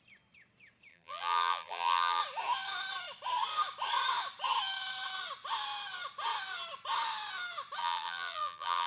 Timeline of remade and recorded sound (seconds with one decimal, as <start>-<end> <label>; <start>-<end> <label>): 0.0-0.9 recorded; 0.9-2.2 remade; 2.2-7.8 recorded; 7.8-8.9 remade